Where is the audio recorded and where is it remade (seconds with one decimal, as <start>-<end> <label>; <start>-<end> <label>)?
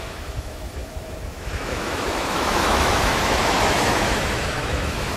0.0-5.2 remade